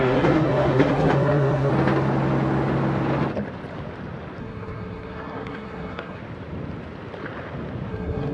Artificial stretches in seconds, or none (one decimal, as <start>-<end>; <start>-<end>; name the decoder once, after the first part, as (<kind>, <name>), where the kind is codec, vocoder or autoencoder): 0.0-1.7 (codec, SNAC); 4.4-6.2; 7.9-8.3